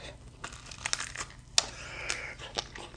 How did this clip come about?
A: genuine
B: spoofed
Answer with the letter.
A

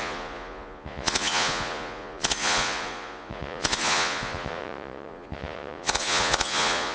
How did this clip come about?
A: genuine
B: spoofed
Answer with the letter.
B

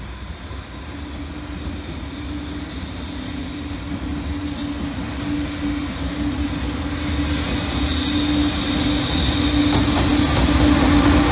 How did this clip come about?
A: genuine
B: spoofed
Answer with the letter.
A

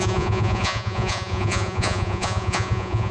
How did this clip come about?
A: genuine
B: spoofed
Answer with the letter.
B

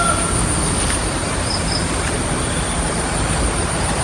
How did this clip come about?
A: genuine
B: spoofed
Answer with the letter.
A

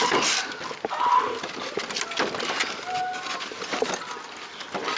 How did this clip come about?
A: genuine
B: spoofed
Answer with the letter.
A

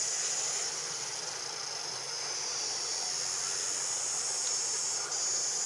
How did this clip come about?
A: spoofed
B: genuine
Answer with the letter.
B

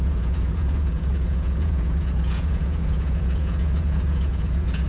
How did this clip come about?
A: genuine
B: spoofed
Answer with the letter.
B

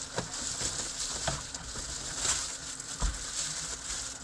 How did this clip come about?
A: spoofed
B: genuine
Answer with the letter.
B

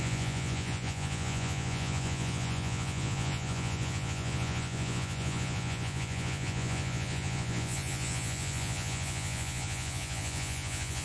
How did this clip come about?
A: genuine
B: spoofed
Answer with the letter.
B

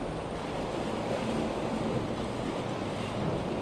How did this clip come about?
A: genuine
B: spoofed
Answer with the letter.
A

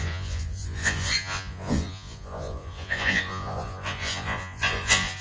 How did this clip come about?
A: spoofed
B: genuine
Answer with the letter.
A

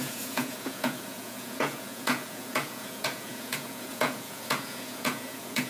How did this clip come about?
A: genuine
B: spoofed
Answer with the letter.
B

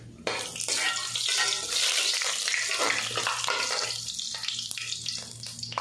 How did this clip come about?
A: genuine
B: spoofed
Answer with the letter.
A